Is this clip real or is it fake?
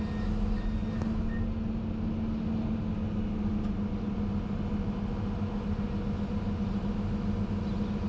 real